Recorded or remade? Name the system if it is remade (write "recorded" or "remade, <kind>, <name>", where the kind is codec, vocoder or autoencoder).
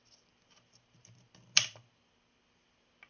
recorded